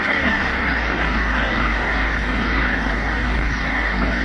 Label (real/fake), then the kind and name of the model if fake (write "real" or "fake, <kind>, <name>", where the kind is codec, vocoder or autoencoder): fake, codec, DAC